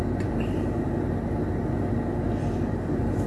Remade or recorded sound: recorded